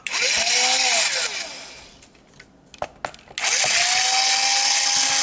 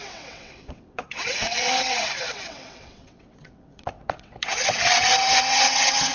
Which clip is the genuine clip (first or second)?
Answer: first